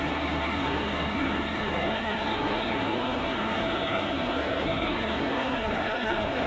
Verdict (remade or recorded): remade